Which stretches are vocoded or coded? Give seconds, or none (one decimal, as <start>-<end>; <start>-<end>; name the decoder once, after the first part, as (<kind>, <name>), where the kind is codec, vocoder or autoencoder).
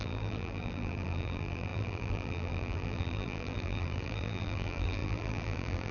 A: 0.0-5.9 (vocoder, BigVGAN v2)